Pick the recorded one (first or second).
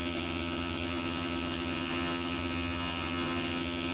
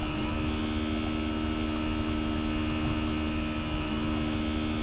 second